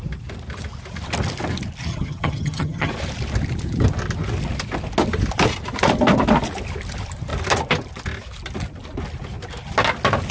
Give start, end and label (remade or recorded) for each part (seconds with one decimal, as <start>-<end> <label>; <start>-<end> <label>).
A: 0.0-1.9 recorded; 1.9-2.9 remade; 2.9-10.3 recorded